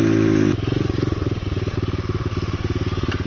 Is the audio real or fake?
real